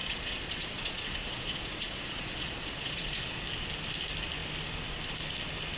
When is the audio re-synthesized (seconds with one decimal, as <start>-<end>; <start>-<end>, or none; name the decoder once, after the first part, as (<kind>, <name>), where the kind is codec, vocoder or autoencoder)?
0.0-3.4 (vocoder, Vocos)